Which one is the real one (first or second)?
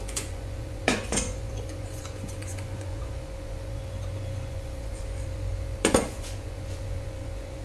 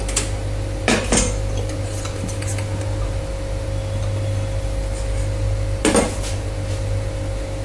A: second